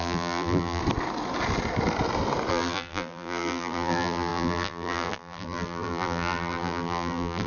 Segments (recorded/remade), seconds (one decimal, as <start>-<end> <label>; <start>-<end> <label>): 0.0-0.8 remade; 0.8-2.5 recorded; 2.5-7.5 remade